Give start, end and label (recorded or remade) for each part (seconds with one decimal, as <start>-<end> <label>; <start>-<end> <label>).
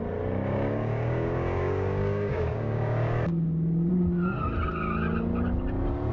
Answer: 0.0-0.5 recorded; 0.5-3.9 remade; 3.9-6.1 recorded